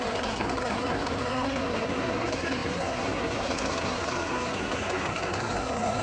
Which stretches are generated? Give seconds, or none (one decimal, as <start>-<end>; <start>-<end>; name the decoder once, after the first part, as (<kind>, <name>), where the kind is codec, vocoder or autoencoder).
0.0-6.0 (codec, SNAC)